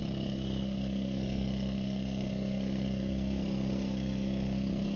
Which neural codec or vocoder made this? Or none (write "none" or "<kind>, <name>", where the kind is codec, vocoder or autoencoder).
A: codec, SNAC